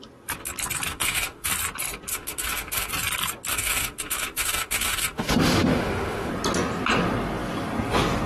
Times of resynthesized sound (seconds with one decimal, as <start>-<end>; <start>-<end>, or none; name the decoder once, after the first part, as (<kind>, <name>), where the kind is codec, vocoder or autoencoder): 0.9-1.5 (autoencoder, DAC-VAE); 2.1-2.9; 3.5-6.3